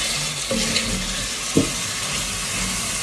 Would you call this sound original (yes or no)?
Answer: yes